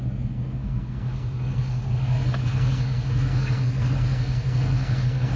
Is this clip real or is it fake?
fake